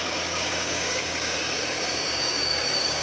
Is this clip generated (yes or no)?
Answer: yes